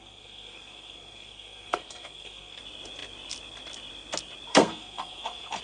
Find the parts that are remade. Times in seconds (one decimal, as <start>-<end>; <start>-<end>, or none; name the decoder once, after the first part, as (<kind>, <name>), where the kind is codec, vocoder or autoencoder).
0.0-2.6 (codec, SNAC); 4.5-5.6

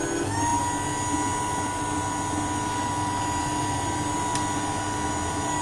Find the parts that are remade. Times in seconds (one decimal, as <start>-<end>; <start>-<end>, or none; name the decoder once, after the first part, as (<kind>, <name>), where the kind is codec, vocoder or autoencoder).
none

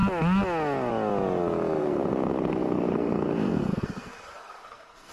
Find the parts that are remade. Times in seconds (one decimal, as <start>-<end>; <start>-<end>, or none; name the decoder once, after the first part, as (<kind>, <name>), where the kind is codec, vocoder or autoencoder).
1.8-5.1 (codec, SNAC)